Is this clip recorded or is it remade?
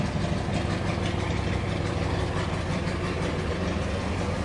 recorded